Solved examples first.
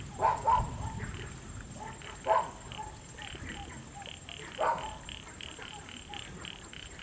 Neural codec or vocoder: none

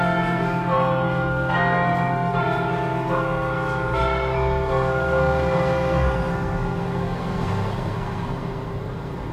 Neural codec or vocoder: codec, SNAC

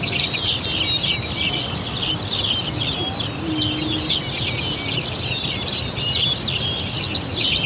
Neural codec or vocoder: none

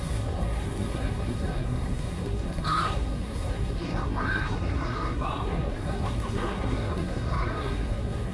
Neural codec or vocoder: codec, SNAC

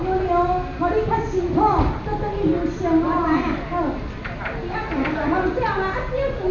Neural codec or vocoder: none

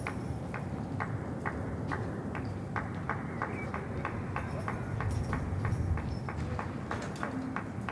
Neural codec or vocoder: none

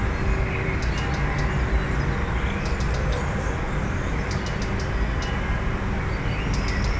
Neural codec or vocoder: none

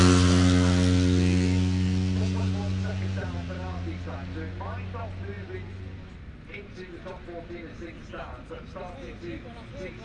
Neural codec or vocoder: none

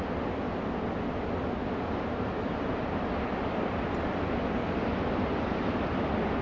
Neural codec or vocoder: none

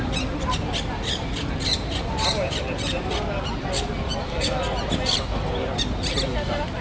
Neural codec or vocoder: none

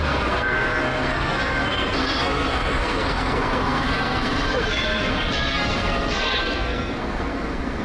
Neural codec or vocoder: codec, SNAC